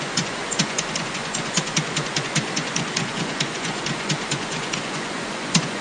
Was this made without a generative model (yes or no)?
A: no